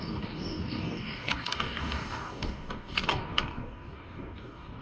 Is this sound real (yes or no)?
no